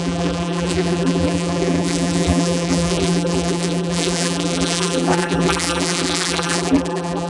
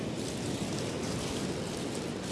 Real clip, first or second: second